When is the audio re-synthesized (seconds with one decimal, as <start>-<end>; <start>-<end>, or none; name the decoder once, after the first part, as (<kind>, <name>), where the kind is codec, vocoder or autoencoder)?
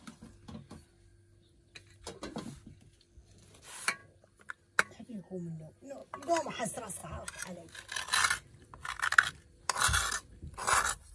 none